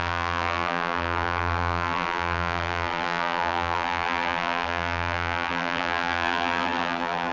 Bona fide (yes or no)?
no